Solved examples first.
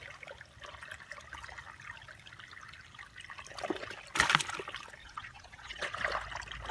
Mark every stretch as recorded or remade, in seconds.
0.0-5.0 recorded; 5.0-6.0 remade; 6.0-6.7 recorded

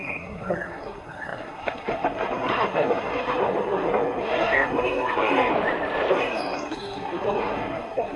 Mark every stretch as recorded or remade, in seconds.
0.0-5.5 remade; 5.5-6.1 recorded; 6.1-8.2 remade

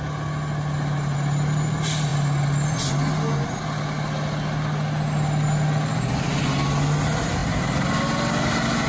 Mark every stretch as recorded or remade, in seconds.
0.0-8.9 recorded

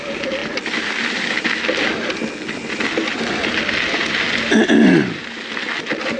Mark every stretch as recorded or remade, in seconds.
0.0-6.2 recorded

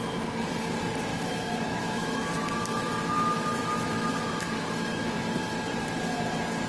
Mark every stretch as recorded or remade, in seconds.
0.0-1.1 recorded; 1.1-5.1 remade; 5.1-6.7 recorded

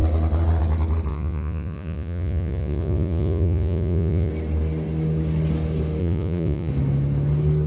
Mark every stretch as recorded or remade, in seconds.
0.0-1.1 recorded; 1.1-4.3 remade; 4.3-6.0 recorded; 6.0-6.7 remade; 6.7-7.7 recorded

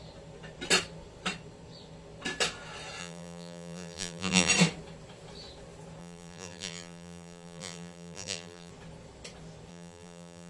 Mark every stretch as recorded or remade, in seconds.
0.0-3.0 recorded; 3.0-4.5 remade; 4.5-6.0 recorded; 6.0-8.7 remade; 8.7-9.7 recorded; 9.7-10.5 remade